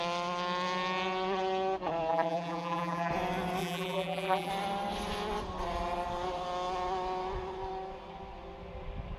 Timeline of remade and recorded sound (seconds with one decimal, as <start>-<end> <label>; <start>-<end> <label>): 0.0-2.1 recorded; 2.1-3.1 remade; 3.1-3.6 recorded; 3.6-4.5 remade; 4.5-9.2 recorded